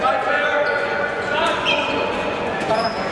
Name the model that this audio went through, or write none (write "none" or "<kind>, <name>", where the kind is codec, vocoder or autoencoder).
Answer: vocoder, Vocos